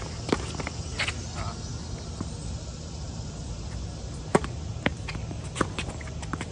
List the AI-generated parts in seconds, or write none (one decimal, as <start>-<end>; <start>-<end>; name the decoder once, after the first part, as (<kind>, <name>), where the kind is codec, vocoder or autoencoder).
none